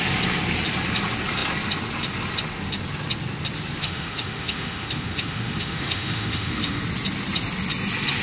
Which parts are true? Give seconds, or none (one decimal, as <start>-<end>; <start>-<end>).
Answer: 0.0-3.8; 6.8-8.2